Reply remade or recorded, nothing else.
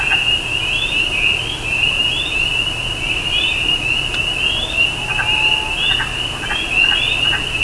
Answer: recorded